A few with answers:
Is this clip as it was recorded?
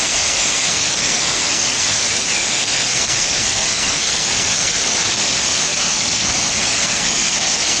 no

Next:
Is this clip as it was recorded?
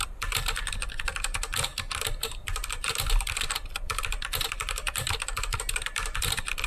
no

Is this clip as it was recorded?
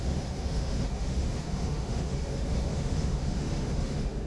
no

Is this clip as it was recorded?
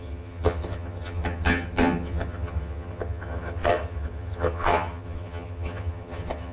no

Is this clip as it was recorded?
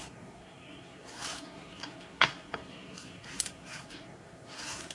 no